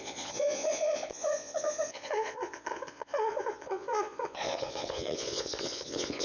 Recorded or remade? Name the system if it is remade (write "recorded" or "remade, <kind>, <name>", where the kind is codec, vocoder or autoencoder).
remade, vocoder, Vocos